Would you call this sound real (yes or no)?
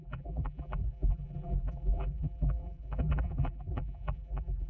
no